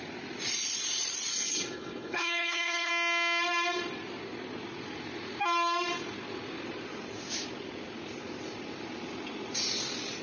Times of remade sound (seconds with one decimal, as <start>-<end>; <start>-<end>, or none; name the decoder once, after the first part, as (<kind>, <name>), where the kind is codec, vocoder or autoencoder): 1.3-2.9 (codec, HILCodec)